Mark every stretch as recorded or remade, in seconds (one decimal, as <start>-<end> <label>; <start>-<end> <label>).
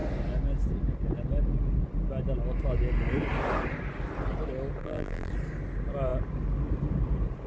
0.0-4.8 recorded; 4.8-5.3 remade; 5.3-7.5 recorded